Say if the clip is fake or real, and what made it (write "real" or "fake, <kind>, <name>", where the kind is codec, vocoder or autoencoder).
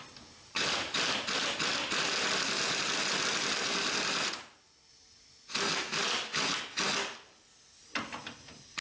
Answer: real